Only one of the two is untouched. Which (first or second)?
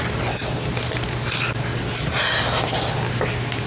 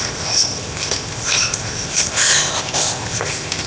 first